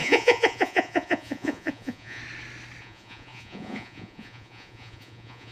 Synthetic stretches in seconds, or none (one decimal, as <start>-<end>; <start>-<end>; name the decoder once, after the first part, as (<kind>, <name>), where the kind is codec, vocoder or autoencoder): 0.0-2.2 (vocoder, Vocos); 2.8-5.5